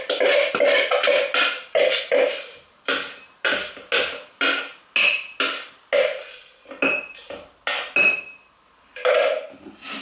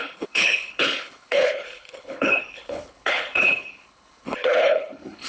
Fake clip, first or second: second